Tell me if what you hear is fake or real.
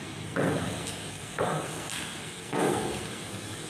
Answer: fake